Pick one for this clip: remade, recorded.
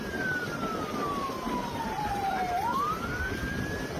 remade